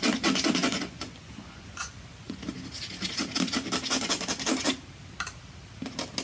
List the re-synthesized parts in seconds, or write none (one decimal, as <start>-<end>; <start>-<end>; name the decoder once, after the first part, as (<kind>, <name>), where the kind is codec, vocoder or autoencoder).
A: 0.6-2.4 (vocoder, Vocos)

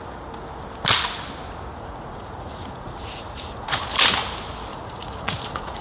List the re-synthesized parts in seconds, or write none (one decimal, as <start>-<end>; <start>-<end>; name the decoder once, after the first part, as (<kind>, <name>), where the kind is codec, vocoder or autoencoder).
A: 1.7-3.8 (vocoder, Vocos); 4.7-5.8

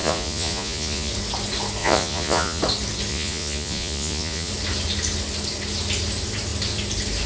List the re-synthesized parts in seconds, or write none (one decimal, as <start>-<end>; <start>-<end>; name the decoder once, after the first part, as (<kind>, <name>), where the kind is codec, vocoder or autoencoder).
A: 0.0-1.1 (vocoder, Vocos); 1.8-2.6; 3.1-4.5

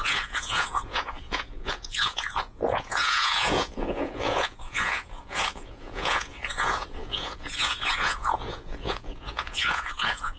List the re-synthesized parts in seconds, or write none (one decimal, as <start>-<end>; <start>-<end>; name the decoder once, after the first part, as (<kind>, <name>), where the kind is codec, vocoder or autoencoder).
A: 0.0-10.4 (vocoder, Vocos)